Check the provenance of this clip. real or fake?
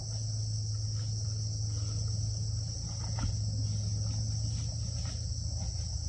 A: real